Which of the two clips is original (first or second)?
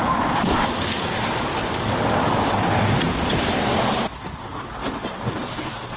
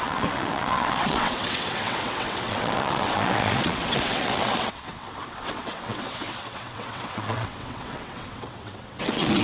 first